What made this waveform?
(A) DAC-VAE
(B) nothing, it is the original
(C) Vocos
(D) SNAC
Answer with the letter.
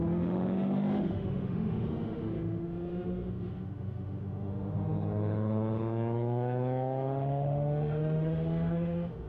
A